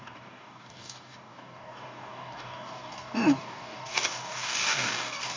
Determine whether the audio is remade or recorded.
remade